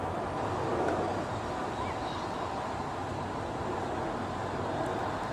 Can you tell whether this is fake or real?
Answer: real